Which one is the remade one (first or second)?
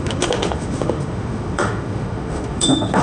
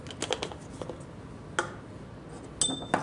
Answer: first